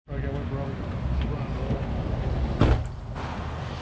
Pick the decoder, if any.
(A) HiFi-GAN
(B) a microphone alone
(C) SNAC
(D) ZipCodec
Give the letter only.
B